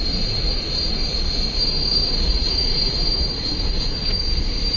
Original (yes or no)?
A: no